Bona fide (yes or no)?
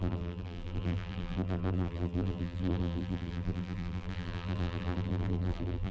no